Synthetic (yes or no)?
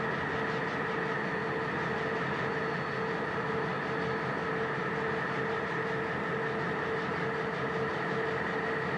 no